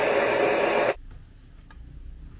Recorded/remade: recorded